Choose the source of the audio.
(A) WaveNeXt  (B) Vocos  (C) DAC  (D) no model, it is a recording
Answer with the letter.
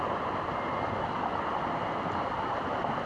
D